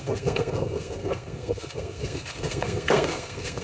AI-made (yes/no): yes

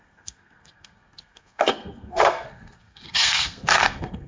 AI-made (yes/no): yes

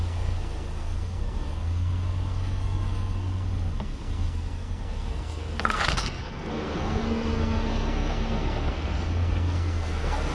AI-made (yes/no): yes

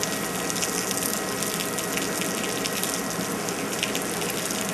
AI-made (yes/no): no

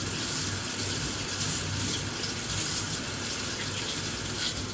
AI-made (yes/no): no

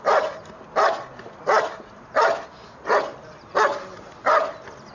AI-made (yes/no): no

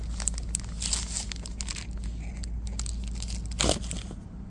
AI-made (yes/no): no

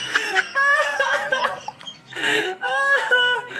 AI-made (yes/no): yes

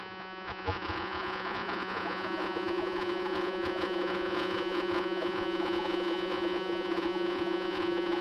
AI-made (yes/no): yes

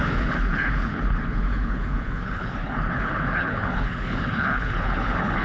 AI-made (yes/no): yes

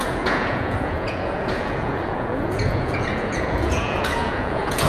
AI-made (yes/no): yes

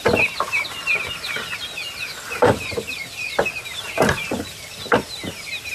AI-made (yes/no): no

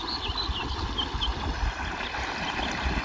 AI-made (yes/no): no